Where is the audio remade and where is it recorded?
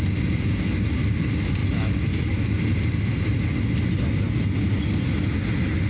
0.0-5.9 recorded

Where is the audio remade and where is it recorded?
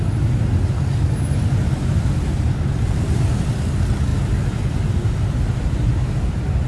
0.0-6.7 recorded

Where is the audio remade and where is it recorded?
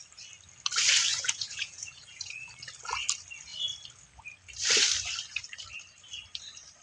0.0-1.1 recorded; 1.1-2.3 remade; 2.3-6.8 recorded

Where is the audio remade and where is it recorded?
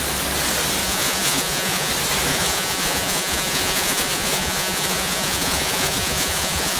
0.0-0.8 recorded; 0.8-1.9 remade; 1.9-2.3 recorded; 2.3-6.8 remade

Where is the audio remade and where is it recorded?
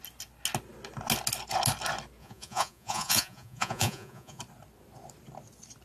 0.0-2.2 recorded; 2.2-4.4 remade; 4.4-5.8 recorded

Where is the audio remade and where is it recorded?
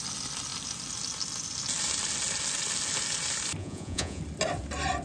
0.0-3.6 recorded; 3.6-4.2 remade; 4.2-5.0 recorded